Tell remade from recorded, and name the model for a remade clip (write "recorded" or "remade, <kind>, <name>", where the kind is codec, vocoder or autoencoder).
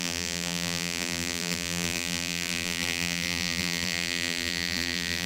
remade, vocoder, BigVGAN v2